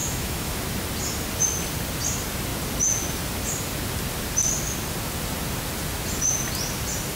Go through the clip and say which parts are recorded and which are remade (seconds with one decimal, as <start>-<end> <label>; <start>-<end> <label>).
0.0-0.6 remade; 0.6-7.2 recorded